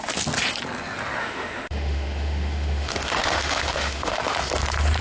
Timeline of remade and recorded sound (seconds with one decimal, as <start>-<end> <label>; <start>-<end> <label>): 0.0-1.2 recorded; 1.2-4.2 remade; 4.2-5.0 recorded